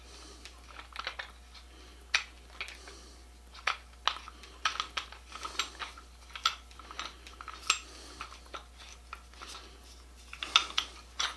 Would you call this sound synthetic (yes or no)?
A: no